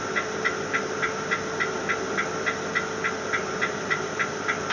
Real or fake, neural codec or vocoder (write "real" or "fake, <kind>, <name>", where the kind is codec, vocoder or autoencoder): real